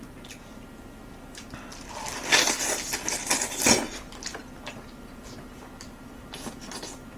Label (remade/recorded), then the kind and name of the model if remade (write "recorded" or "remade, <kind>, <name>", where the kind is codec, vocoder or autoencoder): recorded